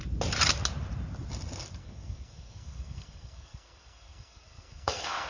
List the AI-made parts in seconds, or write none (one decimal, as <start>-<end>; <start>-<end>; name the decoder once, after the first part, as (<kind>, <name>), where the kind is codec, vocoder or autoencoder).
1.8-5.3 (codec, SNAC)